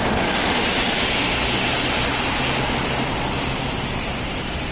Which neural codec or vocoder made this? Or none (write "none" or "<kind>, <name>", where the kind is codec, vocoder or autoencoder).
none